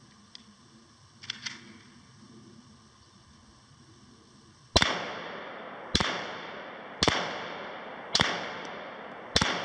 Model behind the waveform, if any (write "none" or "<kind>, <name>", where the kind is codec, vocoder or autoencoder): none